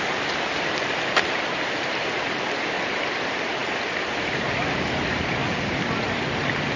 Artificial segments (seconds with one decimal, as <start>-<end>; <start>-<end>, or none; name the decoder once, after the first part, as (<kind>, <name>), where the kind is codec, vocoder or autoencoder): 0.0-3.6 (vocoder, BigVGAN v2); 4.5-6.8